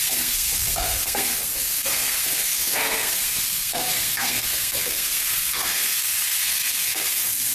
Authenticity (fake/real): fake